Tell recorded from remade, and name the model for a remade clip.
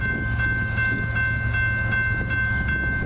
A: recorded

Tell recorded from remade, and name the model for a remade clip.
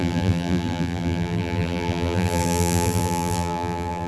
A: remade, vocoder, BigVGAN v2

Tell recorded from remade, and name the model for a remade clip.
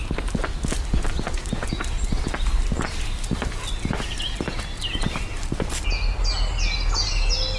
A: recorded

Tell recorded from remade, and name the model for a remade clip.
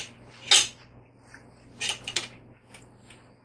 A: recorded